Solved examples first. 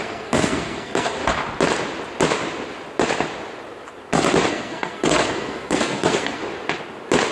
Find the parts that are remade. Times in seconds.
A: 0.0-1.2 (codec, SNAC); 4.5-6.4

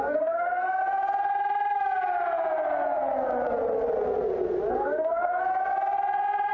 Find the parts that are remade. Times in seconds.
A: 0.0-0.8 (codec, SNAC); 4.7-5.5

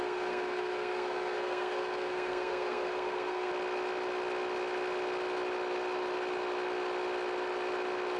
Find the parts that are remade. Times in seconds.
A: 0.0-3.5 (codec, SNAC)

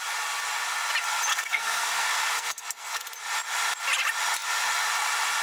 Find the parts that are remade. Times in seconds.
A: 1.3-3.0 (codec, SNAC)